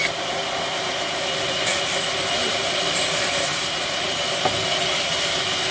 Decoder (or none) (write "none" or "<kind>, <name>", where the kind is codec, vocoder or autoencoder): none